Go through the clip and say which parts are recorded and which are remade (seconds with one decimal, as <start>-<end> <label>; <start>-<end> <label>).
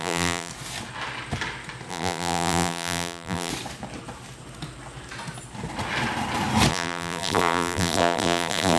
0.0-0.5 remade; 0.5-1.9 recorded; 1.9-3.5 remade; 3.5-6.7 recorded; 6.7-8.8 remade